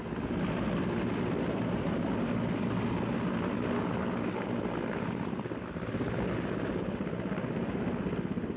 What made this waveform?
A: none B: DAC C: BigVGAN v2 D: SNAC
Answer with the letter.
A